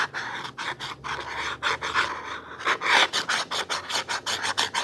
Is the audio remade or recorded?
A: recorded